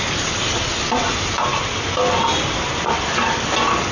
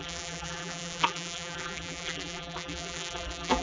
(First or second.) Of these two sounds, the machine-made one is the second